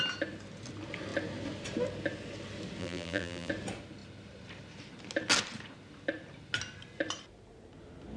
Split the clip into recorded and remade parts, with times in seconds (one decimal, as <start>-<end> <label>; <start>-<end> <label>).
0.0-2.8 recorded; 2.8-3.5 remade; 3.5-8.2 recorded